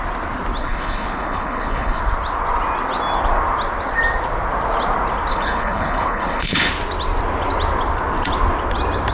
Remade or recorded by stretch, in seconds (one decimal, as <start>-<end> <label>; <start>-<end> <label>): 0.0-0.6 recorded; 0.6-2.0 remade; 2.0-5.3 recorded; 5.3-6.7 remade; 6.7-9.1 recorded